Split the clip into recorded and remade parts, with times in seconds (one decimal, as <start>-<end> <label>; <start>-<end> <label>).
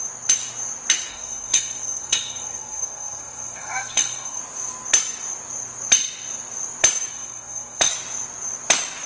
0.0-1.1 recorded; 1.1-4.4 remade; 4.4-7.1 recorded; 7.1-7.9 remade; 7.9-9.1 recorded